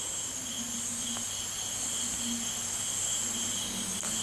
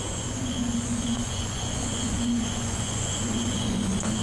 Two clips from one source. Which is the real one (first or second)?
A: first